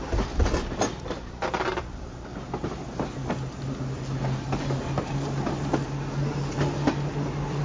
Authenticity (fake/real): real